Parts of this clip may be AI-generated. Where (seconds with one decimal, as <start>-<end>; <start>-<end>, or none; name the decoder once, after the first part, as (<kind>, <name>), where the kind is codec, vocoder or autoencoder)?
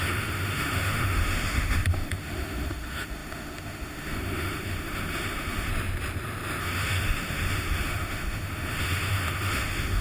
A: 0.0-5.7 (autoencoder, DAC-VAE); 6.6-10.0